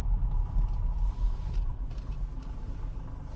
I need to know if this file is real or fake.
real